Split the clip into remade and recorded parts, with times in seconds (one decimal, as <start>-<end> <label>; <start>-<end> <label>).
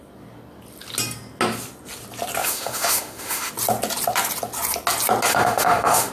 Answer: 0.0-2.4 recorded; 2.4-3.5 remade; 3.5-5.3 recorded; 5.3-6.1 remade